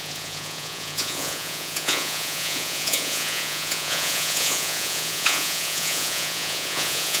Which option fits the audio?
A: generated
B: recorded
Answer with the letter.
A